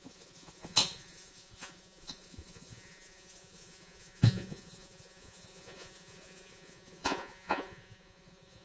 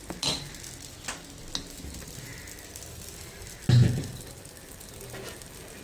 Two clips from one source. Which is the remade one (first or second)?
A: first